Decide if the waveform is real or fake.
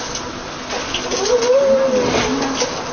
real